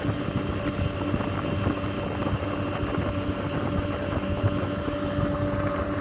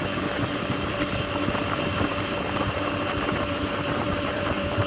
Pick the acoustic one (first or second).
first